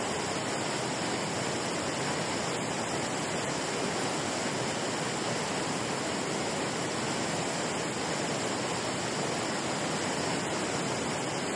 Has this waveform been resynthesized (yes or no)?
no